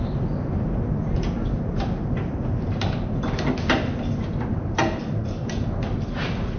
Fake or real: real